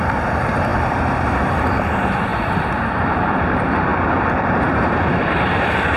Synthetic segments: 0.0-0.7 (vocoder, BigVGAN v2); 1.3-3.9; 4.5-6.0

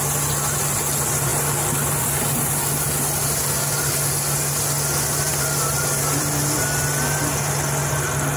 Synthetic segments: 5.3-6.3 (vocoder, BigVGAN v2)

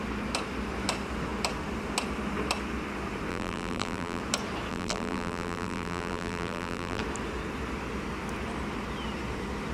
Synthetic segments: 3.3-4.2 (vocoder, BigVGAN v2); 4.7-7.0

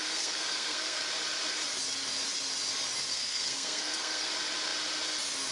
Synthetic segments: 0.0-1.0 (codec, SNAC); 3.1-4.3

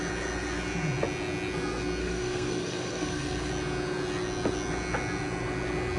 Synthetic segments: 2.0-3.5 (codec, SNAC)

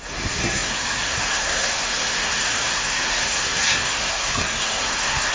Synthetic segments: 0.0-5.3 (codec, SNAC)